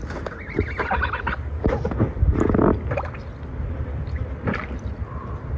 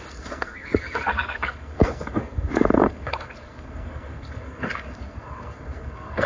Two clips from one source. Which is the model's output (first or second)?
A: second